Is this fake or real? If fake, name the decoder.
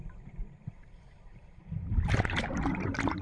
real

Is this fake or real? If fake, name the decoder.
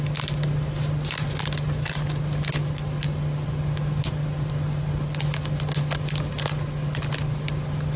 real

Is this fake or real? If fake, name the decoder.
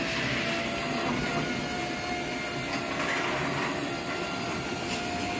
real